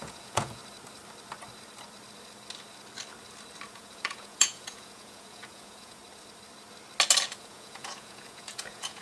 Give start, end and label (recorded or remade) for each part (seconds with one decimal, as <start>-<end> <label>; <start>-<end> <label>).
0.0-0.6 remade; 0.6-3.7 recorded; 3.7-6.0 remade; 6.0-7.4 recorded; 7.4-9.0 remade